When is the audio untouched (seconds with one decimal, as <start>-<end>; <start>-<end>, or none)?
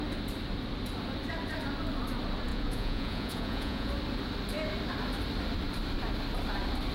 0.0-2.5; 3.9-6.9